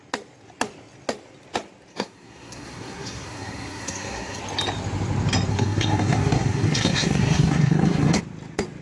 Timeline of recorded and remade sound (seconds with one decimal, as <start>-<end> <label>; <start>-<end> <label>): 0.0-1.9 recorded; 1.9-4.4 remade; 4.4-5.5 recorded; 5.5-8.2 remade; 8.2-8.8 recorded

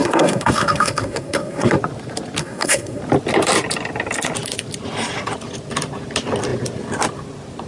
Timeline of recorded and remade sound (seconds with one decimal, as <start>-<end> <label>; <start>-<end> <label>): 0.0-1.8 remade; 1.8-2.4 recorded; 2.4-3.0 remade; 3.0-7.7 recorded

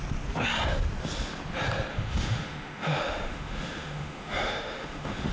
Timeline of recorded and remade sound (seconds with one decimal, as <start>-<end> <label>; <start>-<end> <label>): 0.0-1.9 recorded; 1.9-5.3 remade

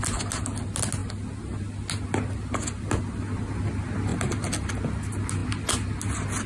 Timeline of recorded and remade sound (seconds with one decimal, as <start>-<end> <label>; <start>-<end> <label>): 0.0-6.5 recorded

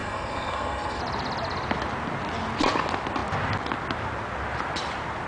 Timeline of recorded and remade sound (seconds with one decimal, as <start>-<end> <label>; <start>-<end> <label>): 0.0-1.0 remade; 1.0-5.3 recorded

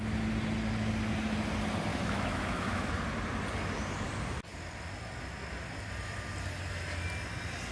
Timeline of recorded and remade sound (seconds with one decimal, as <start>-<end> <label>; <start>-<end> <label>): 0.0-1.9 recorded; 1.9-2.9 remade; 2.9-7.7 recorded

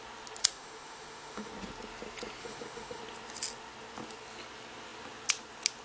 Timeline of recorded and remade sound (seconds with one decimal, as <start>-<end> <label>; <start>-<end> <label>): 0.0-0.4 recorded; 0.4-1.5 remade; 1.5-2.4 recorded; 2.4-3.0 remade; 3.0-5.8 recorded